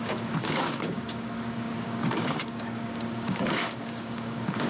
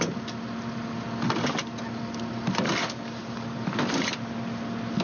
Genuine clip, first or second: second